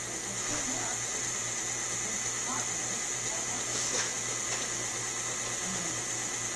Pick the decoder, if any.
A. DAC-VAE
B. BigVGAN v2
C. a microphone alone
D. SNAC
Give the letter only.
C